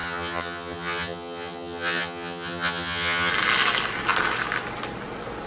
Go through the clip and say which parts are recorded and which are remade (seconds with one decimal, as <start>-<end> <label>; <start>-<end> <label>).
0.0-3.3 remade; 3.3-5.5 recorded